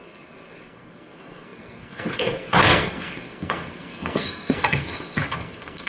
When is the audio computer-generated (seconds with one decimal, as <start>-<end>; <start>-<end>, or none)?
0.0-5.9